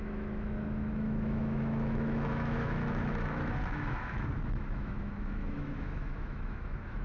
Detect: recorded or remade remade